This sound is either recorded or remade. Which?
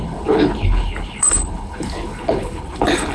remade